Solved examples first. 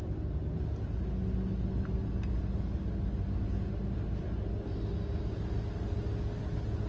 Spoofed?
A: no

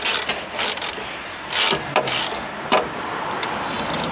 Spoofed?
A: no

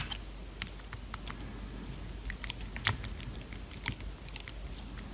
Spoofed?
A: no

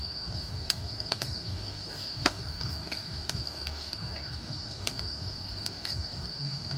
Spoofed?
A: yes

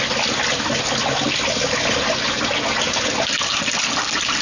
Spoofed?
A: no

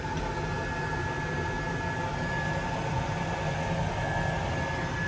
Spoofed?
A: no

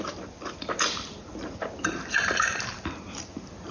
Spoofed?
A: no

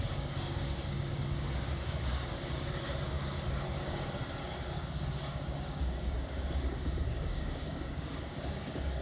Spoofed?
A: yes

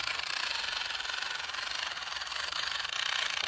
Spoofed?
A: no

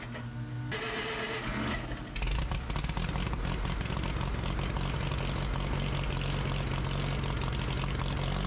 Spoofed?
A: no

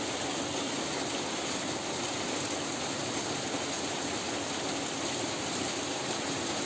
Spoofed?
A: no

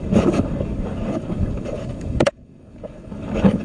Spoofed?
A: yes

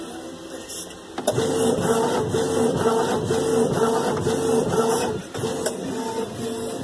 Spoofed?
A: no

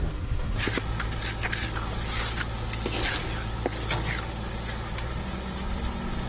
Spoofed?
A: no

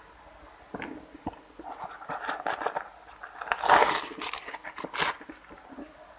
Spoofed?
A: no